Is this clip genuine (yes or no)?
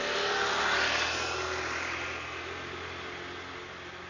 yes